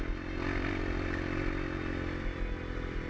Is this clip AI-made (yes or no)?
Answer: no